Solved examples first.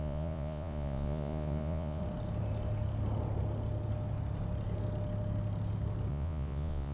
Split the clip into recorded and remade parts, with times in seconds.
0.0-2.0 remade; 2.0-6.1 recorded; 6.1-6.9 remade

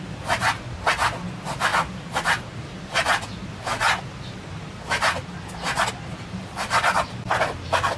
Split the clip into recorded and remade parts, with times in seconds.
0.0-8.0 recorded

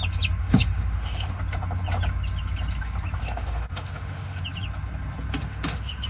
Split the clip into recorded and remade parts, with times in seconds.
0.0-0.4 recorded; 0.4-1.4 remade; 1.4-3.2 recorded; 3.2-4.4 remade; 4.4-5.4 recorded; 5.4-6.1 remade

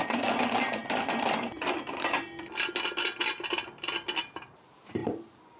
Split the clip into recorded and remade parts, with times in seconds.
0.0-0.8 remade; 0.8-4.2 recorded; 4.2-5.6 remade